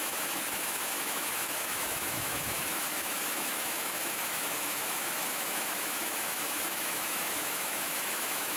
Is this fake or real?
fake